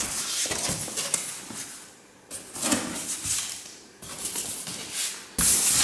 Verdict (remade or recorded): recorded